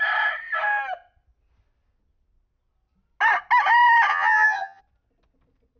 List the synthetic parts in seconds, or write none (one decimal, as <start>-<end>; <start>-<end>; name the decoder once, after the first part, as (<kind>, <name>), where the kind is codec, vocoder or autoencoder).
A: 4.1-4.8 (vocoder, HiFi-GAN)